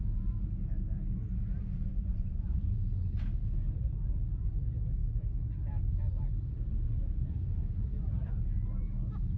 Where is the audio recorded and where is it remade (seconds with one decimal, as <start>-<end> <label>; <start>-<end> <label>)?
0.0-1.9 recorded; 1.9-2.6 remade; 2.6-9.4 recorded